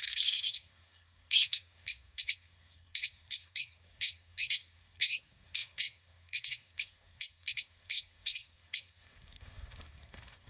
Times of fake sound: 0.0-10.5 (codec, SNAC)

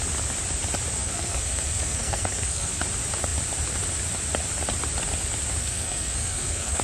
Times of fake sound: 1.0-2.8 (codec, SNAC); 5.6-6.8

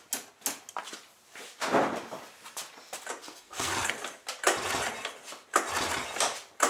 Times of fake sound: 3.2-3.9 (codec, SNAC)

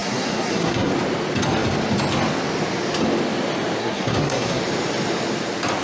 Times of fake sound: 0.0-0.9 (codec, SNAC); 3.8-4.6

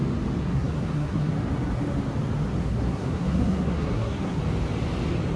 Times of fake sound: 0.4-1.3 (codec, SNAC); 2.6-4.4

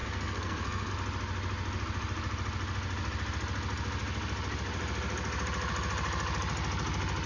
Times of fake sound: 0.0-0.9 (codec, SNAC)

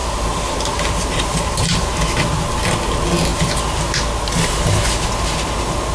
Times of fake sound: none

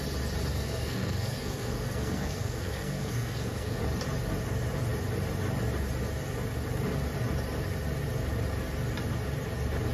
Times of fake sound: 0.5-3.8 (codec, SNAC)